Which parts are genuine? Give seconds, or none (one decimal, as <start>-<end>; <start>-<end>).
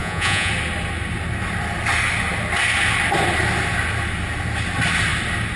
0.5-5.6